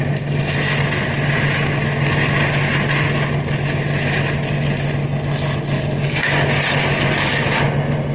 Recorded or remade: recorded